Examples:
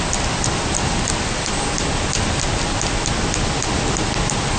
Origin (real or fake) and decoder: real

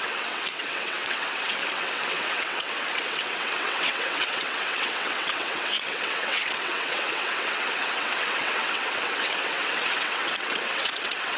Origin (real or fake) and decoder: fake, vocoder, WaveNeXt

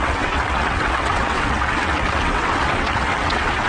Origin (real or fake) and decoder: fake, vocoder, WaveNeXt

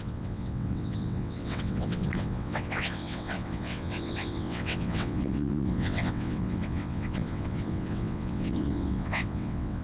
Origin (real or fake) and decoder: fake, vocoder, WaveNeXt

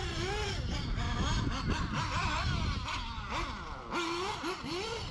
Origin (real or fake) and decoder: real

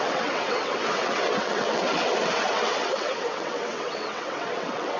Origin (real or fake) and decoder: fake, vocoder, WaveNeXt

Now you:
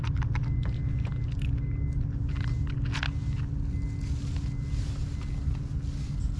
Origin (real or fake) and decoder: real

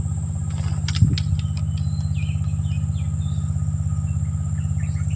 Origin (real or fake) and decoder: real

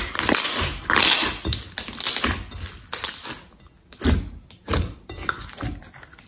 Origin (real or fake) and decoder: real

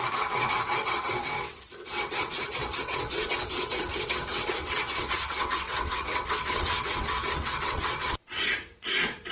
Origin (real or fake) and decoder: fake, vocoder, WaveNeXt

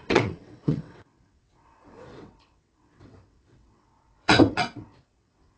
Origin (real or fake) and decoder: fake, vocoder, WaveNeXt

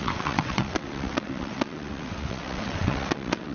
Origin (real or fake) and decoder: fake, vocoder, WaveNeXt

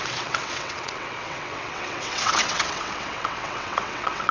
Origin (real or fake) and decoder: fake, vocoder, WaveNeXt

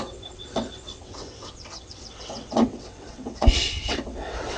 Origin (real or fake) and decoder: fake, vocoder, WaveNeXt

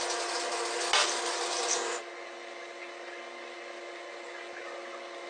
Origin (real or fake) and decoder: real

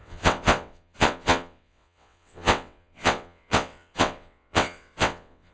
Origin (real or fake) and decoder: fake, vocoder, WaveNeXt